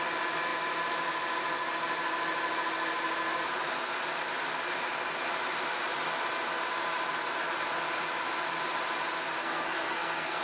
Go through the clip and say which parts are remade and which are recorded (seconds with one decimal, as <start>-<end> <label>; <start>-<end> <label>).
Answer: 0.0-9.4 recorded; 9.4-10.4 remade